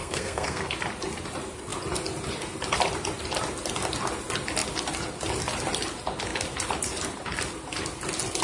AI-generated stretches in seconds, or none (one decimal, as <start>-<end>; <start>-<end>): 0.0-0.7